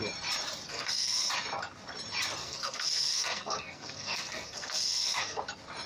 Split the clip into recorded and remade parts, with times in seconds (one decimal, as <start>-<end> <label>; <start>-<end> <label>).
0.0-0.7 recorded; 0.7-1.3 remade; 1.3-2.4 recorded; 2.4-5.4 remade; 5.4-5.9 recorded